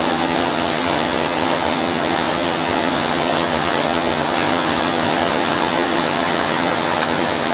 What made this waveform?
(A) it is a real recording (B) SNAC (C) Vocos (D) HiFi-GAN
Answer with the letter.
D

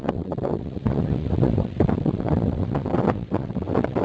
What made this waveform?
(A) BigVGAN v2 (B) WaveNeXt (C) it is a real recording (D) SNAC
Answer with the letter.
B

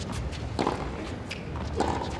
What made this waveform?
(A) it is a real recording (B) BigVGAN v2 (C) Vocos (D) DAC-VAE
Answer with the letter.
A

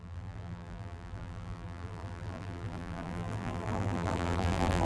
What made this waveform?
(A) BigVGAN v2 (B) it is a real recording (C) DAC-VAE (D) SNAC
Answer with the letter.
A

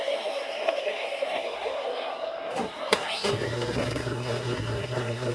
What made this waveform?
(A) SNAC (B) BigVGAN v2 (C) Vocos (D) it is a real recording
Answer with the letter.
A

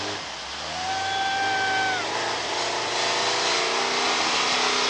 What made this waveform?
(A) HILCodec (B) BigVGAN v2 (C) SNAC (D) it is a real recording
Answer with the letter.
D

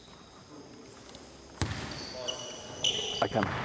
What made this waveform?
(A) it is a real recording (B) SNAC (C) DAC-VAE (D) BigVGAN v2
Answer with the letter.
A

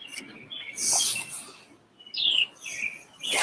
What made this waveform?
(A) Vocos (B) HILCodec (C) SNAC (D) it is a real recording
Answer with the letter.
D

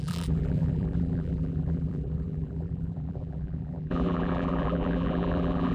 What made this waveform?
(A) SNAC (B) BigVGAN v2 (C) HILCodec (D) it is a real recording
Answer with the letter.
B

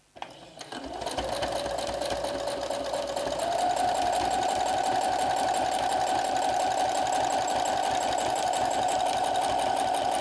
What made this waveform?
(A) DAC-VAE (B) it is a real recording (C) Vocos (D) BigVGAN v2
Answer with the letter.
B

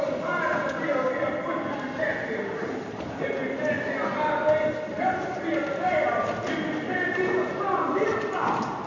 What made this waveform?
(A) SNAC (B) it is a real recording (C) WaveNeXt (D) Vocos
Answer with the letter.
B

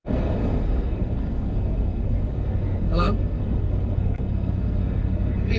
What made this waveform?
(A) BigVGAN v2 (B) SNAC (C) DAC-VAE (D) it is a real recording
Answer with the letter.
B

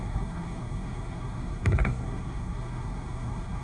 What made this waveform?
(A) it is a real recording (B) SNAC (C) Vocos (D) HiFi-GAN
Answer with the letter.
B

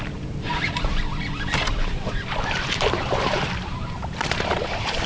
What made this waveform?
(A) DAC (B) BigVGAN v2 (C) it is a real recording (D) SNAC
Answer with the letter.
B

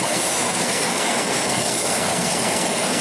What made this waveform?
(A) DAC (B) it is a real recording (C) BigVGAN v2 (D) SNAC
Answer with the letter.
D